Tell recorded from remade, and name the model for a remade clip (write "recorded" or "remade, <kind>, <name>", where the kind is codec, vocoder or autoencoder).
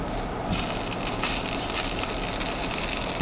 recorded